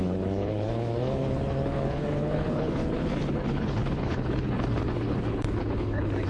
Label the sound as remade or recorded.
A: remade